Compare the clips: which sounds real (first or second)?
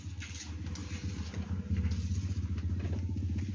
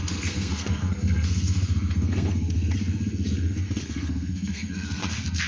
first